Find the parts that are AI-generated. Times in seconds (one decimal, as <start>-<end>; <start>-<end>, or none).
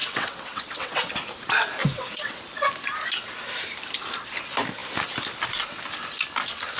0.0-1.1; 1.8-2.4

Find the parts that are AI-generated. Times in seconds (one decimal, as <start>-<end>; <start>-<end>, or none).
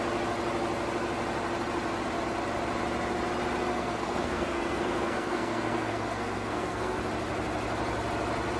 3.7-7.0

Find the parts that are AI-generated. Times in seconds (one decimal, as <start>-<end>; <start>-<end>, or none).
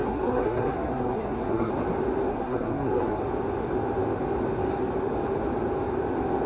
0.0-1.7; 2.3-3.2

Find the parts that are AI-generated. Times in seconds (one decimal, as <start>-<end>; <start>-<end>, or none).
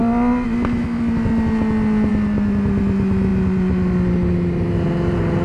none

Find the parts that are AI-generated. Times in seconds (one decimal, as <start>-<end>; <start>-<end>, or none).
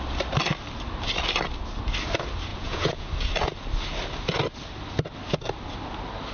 2.5-3.1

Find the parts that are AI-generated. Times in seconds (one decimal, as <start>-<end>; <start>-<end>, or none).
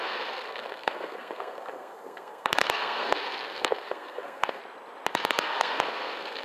0.0-4.6; 5.1-6.4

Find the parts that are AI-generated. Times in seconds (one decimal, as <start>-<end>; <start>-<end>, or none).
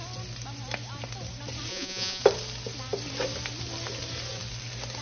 1.7-2.2